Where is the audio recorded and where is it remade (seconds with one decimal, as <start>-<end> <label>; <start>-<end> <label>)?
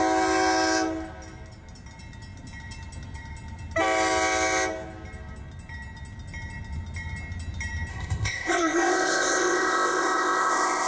0.0-7.9 recorded; 7.9-10.9 remade